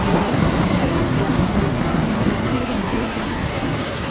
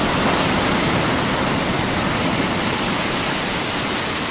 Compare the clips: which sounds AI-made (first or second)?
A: first